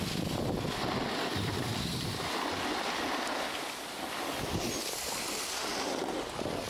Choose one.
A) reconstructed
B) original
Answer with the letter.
B